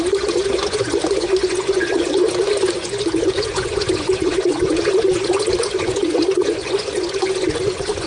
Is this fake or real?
fake